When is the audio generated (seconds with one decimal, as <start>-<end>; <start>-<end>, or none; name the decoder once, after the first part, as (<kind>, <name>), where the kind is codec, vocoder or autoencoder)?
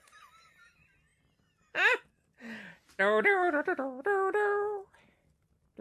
none